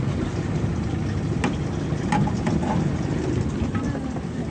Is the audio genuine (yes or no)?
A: yes